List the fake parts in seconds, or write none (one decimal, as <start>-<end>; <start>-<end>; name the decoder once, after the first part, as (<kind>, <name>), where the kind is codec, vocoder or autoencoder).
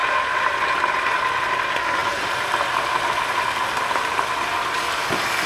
none